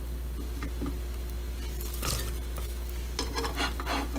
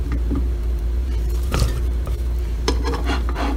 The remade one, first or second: second